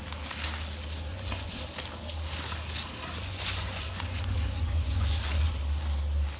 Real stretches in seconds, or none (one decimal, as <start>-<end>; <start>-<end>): 0.0-1.1; 1.6-3.2; 5.6-6.4